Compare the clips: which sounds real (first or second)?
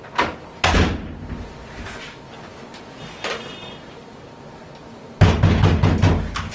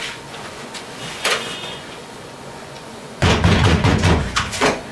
first